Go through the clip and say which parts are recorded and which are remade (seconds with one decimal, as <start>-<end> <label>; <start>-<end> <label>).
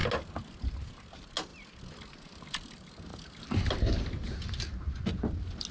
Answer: 0.0-5.7 recorded